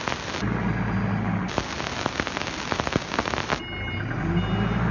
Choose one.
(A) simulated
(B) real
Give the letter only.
B